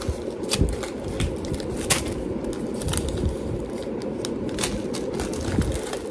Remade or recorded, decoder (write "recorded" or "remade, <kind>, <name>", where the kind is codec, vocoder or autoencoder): recorded